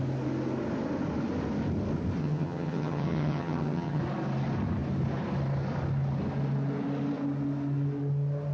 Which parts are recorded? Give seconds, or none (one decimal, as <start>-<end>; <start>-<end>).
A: 0.0-2.2; 4.0-8.5